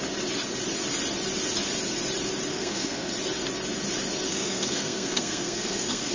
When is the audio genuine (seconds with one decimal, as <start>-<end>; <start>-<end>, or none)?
0.0-2.5; 3.1-4.3